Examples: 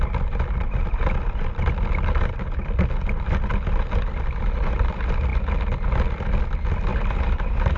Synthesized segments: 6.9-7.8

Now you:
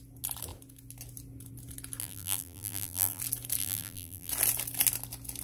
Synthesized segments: 2.0-3.2; 3.6-4.3

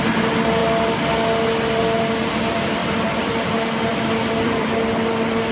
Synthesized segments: 2.8-3.5; 3.9-4.9

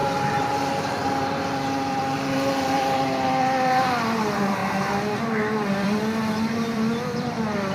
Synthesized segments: 0.0-7.7

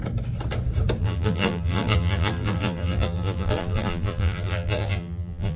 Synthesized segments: 1.0-5.6

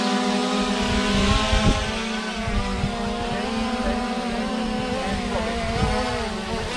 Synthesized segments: none

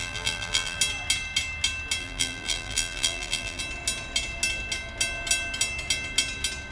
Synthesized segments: 0.0-0.8; 2.0-3.6